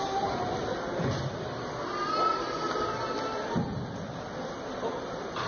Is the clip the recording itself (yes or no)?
yes